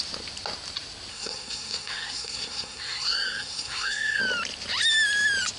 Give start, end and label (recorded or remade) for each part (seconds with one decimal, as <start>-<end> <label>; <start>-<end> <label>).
0.0-1.1 recorded; 1.1-4.2 remade; 4.2-5.6 recorded